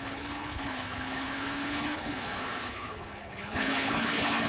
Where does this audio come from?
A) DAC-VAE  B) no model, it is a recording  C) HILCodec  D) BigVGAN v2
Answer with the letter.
C